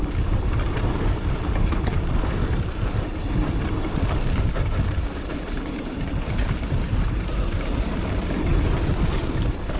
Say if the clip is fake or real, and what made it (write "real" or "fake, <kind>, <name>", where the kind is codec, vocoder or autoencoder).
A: fake, vocoder, BigVGAN v2